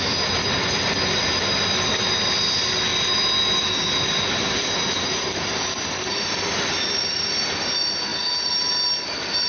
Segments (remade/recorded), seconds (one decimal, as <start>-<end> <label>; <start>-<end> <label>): 0.0-9.5 recorded